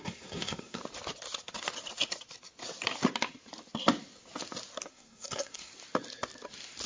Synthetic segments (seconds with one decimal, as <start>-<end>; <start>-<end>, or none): 0.0-0.8; 4.9-5.7